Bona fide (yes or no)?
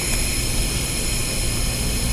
yes